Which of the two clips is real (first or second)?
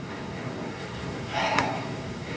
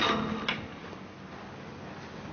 second